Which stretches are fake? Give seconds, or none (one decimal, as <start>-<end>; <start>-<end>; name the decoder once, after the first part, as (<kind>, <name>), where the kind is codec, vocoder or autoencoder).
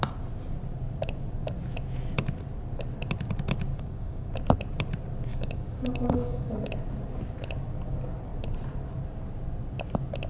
3.7-4.3 (codec, DAC); 5.3-6.5